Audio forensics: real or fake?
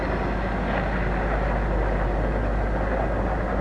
real